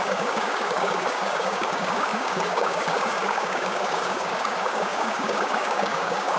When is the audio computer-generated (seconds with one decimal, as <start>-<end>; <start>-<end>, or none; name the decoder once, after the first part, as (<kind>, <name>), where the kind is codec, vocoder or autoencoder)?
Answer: 0.0-6.4 (codec, DAC)